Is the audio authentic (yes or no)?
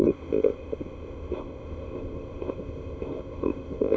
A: no